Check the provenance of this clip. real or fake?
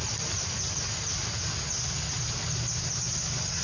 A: real